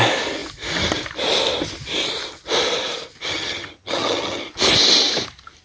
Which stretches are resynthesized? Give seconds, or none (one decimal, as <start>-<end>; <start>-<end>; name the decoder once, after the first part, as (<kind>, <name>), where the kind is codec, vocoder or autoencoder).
3.3-4.4 (vocoder, HiFi-GAN)